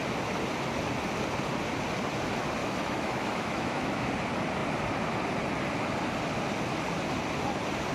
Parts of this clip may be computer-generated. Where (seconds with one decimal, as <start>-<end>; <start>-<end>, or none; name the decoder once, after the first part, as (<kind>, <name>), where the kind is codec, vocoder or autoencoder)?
2.6-4.1 (autoencoder, DAC-VAE)